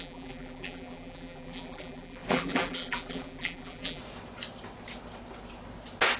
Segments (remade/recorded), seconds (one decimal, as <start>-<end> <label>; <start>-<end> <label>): 0.0-4.0 remade; 4.0-6.2 recorded